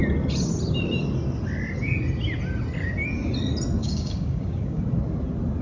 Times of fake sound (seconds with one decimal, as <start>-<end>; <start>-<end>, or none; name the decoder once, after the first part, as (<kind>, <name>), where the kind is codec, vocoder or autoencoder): 3.8-4.8 (codec, DAC)